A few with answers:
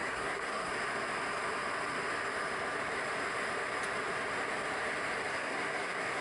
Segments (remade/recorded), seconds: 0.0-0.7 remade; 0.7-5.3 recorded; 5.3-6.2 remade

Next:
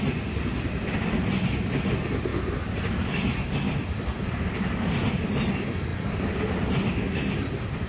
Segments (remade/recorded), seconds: 0.0-7.9 recorded

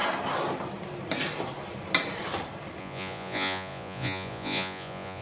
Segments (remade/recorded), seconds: 0.0-2.8 recorded; 2.8-5.2 remade

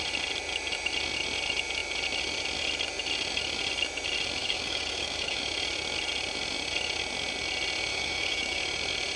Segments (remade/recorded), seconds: 0.0-4.4 recorded; 4.4-5.4 remade; 5.4-7.9 recorded; 7.9-8.6 remade; 8.6-9.2 recorded

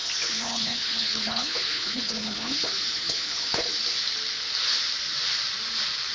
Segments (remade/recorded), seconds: 0.0-3.7 remade; 3.7-6.1 recorded

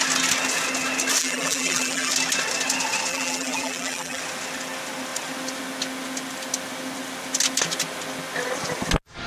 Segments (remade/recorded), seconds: 0.0-1.2 recorded; 1.2-2.1 remade; 2.1-3.1 recorded; 3.1-4.2 remade; 4.2-9.3 recorded

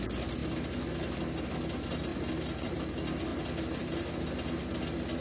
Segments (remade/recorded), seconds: 0.0-2.1 recorded; 2.1-2.9 remade; 2.9-3.3 recorded; 3.3-4.6 remade; 4.6-5.2 recorded

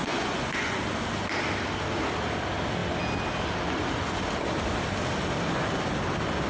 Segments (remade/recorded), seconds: 0.0-0.8 remade; 0.8-6.5 recorded